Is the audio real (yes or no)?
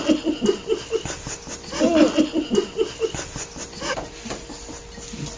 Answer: yes